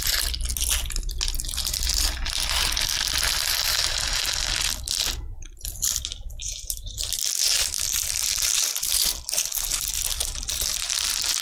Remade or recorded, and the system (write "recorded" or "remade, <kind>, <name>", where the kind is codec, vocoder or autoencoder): recorded